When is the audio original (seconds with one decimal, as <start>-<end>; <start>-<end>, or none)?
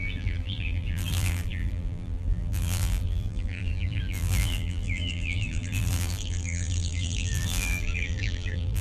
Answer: none